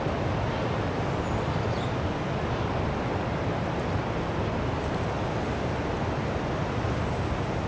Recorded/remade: recorded